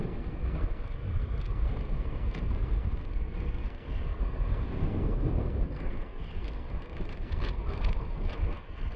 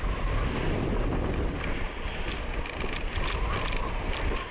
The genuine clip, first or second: second